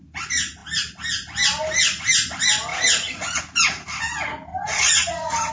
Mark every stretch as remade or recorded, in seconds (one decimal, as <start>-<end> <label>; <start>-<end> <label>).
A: 0.0-2.7 recorded; 2.7-3.4 remade; 3.4-4.5 recorded; 4.5-5.5 remade